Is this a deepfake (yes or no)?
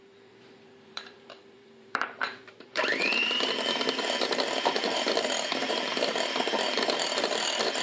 yes